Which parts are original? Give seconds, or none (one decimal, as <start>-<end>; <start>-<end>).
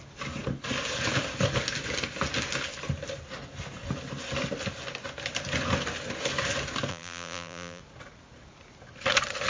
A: 0.0-6.9; 7.8-9.5